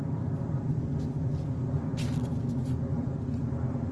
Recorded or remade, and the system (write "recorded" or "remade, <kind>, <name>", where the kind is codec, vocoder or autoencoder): recorded